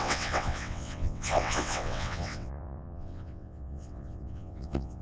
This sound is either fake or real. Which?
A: fake